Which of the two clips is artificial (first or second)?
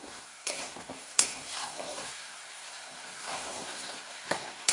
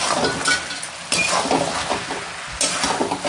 first